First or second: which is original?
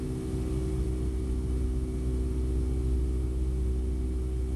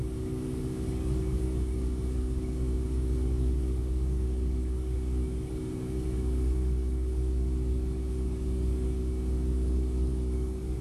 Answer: first